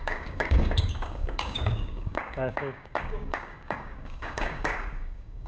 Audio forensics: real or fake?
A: fake